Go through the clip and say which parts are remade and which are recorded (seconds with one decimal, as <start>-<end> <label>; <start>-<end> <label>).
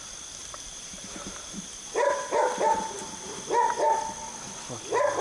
0.0-0.4 recorded; 0.4-3.5 remade; 3.5-5.2 recorded